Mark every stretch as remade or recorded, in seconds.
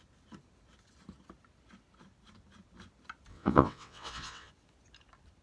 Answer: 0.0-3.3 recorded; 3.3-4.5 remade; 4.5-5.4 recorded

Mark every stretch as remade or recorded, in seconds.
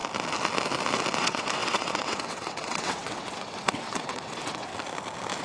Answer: 0.0-1.2 recorded; 1.2-4.7 remade; 4.7-5.4 recorded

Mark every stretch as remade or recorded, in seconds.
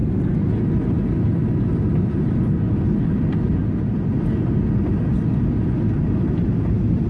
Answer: 0.0-7.1 recorded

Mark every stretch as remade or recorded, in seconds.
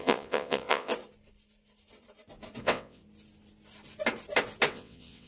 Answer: 0.0-0.9 remade; 0.9-2.6 recorded; 2.6-3.0 remade; 3.0-4.7 recorded; 4.7-5.3 remade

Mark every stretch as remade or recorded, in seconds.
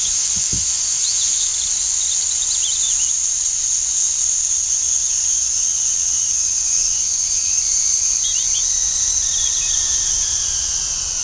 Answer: 0.0-1.5 remade; 1.5-5.3 recorded; 5.3-7.5 remade; 7.5-11.2 recorded